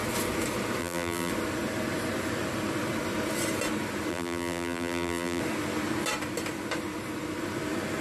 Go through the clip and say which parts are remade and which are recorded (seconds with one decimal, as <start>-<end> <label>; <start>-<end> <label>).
0.0-0.8 recorded; 0.8-1.3 remade; 1.3-4.1 recorded; 4.1-5.4 remade; 5.4-8.0 recorded